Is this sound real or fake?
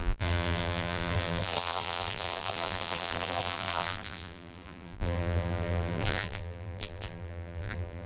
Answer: fake